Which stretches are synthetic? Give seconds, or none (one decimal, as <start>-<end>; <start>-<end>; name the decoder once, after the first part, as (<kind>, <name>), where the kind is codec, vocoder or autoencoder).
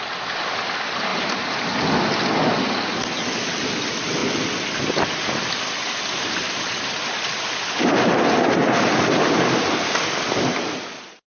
none